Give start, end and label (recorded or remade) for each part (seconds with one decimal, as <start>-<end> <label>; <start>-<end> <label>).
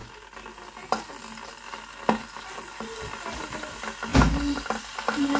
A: 0.0-5.4 recorded